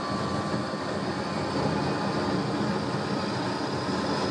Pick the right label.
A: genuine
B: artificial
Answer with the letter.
A